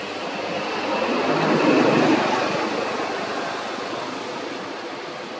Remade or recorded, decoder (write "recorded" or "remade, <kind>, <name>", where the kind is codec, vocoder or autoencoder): recorded